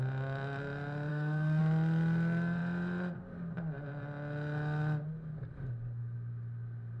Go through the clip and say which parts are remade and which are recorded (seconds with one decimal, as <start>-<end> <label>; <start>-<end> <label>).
0.0-1.1 recorded; 1.1-1.6 remade; 1.6-7.0 recorded